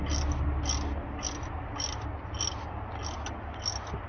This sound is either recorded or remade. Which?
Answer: recorded